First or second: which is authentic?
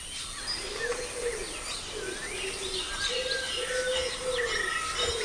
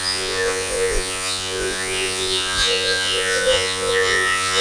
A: first